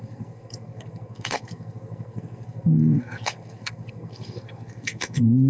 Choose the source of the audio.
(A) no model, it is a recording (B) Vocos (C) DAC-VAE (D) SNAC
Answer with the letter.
D